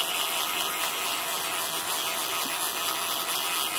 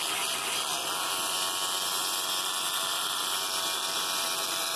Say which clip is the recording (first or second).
first